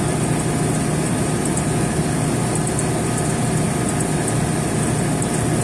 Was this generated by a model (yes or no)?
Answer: no